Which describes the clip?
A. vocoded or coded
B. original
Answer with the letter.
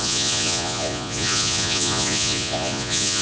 A